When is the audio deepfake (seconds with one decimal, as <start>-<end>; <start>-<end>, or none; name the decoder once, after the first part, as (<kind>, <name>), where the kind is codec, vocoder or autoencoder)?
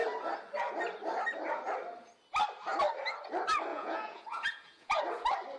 3.7-5.0 (vocoder, Vocos)